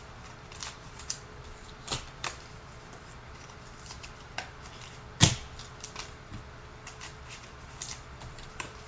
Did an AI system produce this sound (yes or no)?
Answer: yes